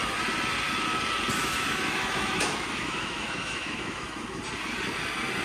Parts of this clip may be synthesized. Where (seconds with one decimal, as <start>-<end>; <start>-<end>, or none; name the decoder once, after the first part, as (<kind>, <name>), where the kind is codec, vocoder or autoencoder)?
1.4-4.4 (autoencoder, DAC-VAE)